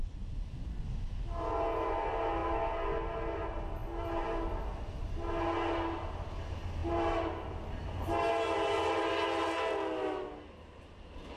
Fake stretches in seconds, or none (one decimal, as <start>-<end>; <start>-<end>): none